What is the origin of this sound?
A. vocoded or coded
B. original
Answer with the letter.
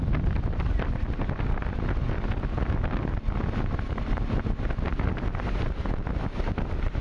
B